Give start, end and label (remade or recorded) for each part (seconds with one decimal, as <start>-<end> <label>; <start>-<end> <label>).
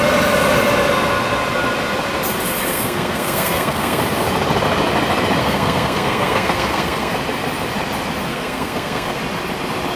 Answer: 0.0-2.7 recorded; 2.7-4.0 remade; 4.0-5.4 recorded; 5.4-7.1 remade; 7.1-8.3 recorded; 8.3-9.2 remade; 9.2-10.0 recorded